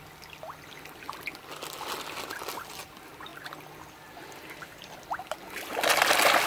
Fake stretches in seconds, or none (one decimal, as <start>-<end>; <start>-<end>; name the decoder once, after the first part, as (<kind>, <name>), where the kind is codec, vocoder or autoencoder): none